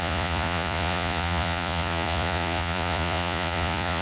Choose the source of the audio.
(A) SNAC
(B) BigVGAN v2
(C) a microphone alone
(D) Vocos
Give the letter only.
D